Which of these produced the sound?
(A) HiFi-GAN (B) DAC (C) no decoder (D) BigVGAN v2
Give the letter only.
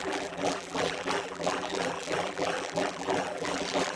D